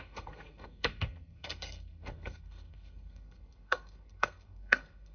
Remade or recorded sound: remade